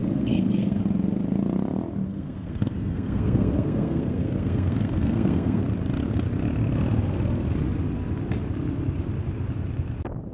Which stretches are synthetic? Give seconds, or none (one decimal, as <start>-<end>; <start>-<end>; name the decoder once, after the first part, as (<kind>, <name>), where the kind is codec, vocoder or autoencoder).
0.0-0.8 (codec, SNAC); 2.1-5.6